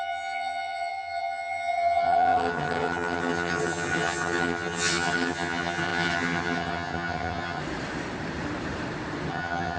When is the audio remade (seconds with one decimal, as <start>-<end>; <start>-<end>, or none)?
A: 0.0-7.6; 9.3-9.8